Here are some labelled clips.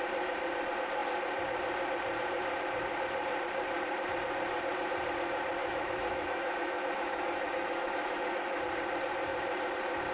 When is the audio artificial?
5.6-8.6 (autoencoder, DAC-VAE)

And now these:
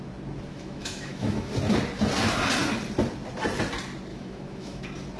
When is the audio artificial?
0.5-1.5 (autoencoder, DAC-VAE); 4.1-4.8

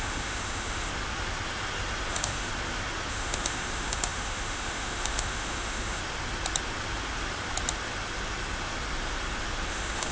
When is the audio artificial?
0.0-0.9 (autoencoder, DAC-VAE); 2.1-2.5; 3.1-6.0; 9.7-10.1